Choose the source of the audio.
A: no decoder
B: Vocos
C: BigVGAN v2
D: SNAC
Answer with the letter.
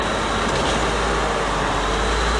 A